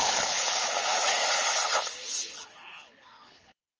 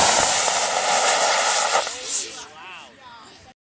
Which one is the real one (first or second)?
second